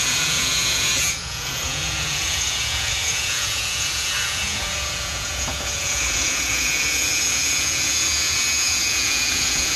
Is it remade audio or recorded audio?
remade